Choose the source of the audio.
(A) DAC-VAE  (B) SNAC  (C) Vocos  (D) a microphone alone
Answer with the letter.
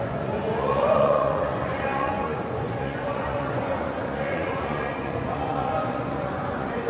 C